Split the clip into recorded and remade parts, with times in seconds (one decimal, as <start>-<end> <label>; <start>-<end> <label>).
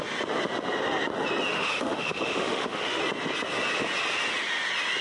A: 0.0-1.5 recorded; 1.5-3.0 remade; 3.0-5.0 recorded